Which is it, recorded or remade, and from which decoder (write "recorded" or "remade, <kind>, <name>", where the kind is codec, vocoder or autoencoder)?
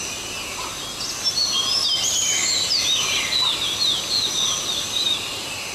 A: recorded